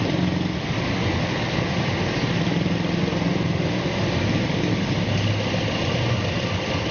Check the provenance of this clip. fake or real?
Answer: real